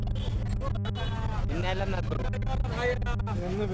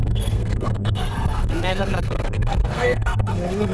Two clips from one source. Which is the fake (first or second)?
second